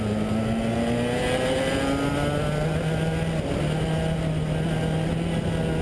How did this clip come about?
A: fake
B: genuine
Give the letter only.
B